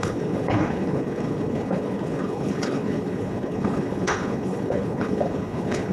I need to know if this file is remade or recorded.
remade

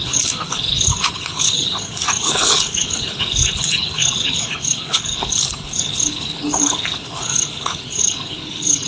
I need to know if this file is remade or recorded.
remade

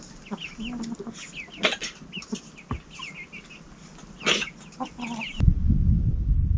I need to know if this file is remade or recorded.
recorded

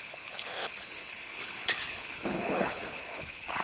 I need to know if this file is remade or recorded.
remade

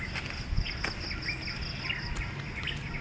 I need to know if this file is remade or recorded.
recorded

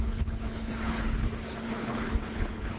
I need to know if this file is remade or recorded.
remade